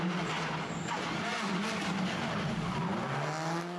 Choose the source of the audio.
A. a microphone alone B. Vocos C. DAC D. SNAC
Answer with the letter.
A